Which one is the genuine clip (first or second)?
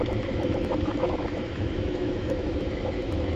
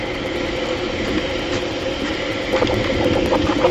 second